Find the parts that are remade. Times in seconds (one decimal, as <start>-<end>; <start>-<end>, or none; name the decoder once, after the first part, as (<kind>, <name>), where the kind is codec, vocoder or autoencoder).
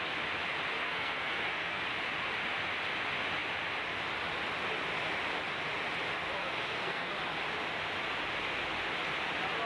0.8-1.8 (codec, SNAC); 6.4-7.1